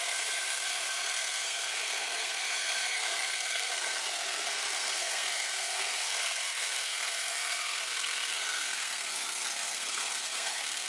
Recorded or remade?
remade